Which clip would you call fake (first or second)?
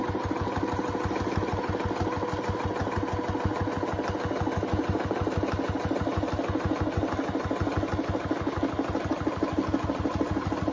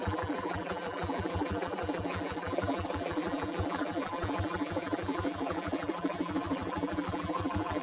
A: second